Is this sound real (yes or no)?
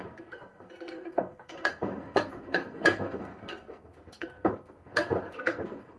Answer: no